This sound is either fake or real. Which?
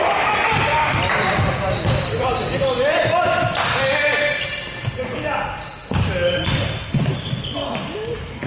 real